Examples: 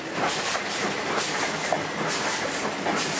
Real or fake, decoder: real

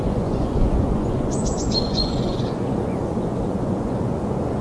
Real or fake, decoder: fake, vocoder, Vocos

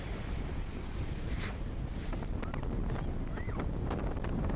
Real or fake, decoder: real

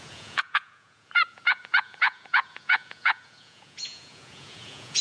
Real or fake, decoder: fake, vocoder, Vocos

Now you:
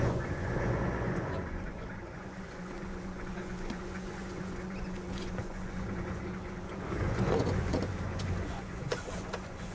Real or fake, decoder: fake, vocoder, Vocos